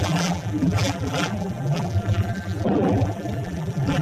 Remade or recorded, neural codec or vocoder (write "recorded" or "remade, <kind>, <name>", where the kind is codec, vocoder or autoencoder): remade, vocoder, BigVGAN v2